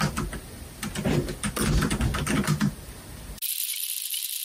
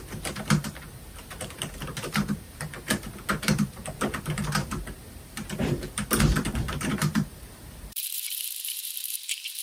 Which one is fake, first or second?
second